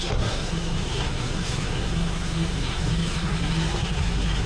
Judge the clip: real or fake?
fake